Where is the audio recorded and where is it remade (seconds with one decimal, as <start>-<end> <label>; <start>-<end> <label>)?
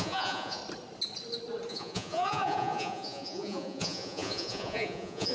0.0-0.6 remade; 0.6-1.7 recorded; 1.7-5.3 remade